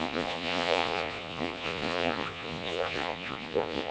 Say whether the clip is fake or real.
fake